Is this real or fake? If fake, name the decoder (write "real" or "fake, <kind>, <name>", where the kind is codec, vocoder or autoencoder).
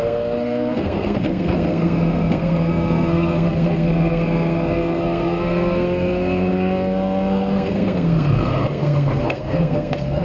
fake, codec, SNAC